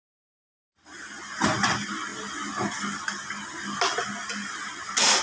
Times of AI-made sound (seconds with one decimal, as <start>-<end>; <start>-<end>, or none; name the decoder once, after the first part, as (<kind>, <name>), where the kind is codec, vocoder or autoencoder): none